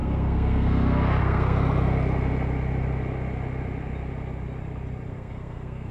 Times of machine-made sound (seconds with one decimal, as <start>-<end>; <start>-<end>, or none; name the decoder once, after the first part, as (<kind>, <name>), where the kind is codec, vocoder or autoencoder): 0.0-1.6 (codec, SNAC); 5.1-5.9